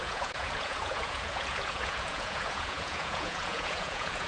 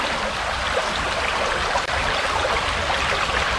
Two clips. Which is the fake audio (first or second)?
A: first